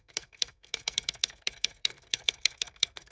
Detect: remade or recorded remade